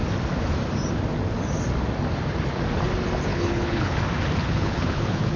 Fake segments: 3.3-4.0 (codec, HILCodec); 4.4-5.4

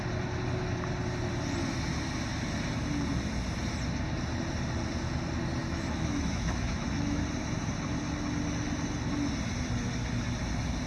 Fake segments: 5.6-7.2 (autoencoder, DAC-VAE)

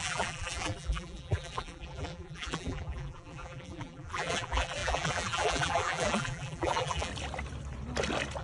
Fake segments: 0.0-7.1 (vocoder, BigVGAN v2)

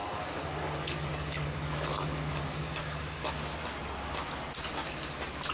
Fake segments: 0.0-3.3 (codec, DAC)

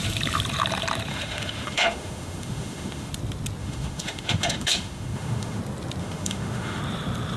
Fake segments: 1.1-3.1 (autoencoder, DAC-VAE); 3.6-5.6; 6.0-6.8

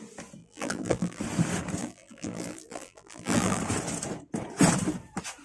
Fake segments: 0.4-1.2 (vocoder, BigVGAN v2); 1.8-3.6